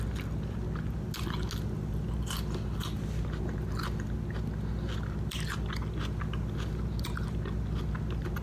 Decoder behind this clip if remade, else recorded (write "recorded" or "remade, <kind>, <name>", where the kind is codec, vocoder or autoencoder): recorded